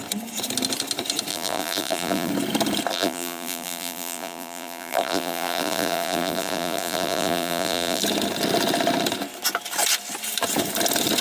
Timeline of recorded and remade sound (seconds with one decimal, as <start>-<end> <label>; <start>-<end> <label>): 0.0-1.3 recorded; 1.3-2.3 remade; 2.3-2.9 recorded; 2.9-8.0 remade; 8.0-11.2 recorded